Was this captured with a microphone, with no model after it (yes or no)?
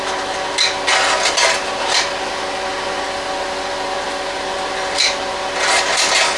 yes